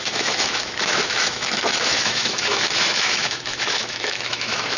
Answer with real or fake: fake